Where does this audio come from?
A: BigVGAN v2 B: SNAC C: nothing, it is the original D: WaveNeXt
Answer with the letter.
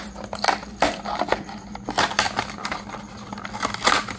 C